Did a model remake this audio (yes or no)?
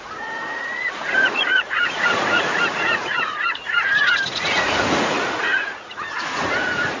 yes